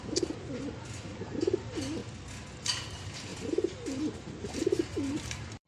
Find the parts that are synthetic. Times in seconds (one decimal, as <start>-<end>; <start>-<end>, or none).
0.0-2.0; 2.6-5.7